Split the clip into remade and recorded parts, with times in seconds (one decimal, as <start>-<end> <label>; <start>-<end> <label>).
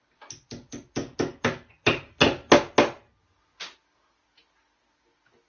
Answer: 0.0-5.5 recorded